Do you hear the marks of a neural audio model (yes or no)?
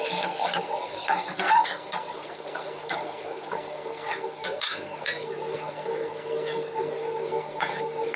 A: yes